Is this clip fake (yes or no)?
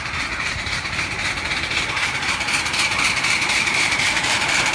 yes